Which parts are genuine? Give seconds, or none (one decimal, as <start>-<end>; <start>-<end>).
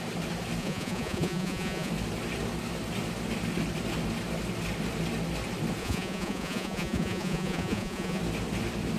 0.0-0.6; 1.9-5.8; 8.2-9.0